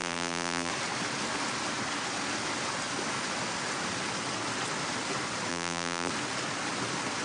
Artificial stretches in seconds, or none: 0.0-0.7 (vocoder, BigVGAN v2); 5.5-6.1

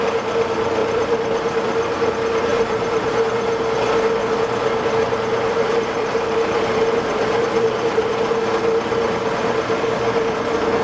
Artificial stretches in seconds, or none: 0.8-2.1 (vocoder, BigVGAN v2); 2.5-3.1; 5.3-8.3

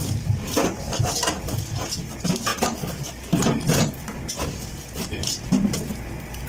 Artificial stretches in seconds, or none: 0.0-1.0 (vocoder, BigVGAN v2)

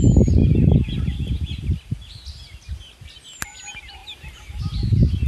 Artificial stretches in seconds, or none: 4.0-4.6 (vocoder, BigVGAN v2)

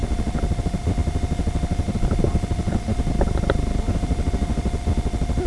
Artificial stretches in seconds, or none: 0.0-0.6 (vocoder, BigVGAN v2)